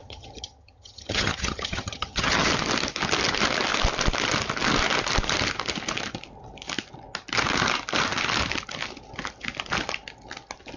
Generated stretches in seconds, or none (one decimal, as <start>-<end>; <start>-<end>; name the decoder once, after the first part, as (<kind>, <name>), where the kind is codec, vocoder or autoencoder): 0.0-2.5 (vocoder, HiFi-GAN)